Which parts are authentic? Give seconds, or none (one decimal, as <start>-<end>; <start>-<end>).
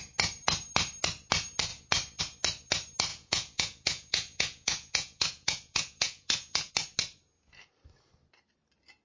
0.0-3.1; 6.7-9.0